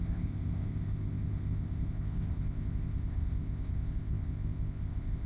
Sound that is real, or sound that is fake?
fake